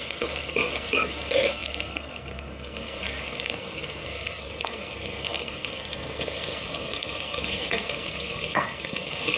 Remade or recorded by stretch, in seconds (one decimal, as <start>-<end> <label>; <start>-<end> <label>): 0.0-9.4 remade